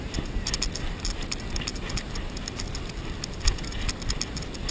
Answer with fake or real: real